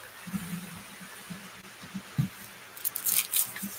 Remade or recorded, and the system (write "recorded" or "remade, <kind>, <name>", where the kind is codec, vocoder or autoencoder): recorded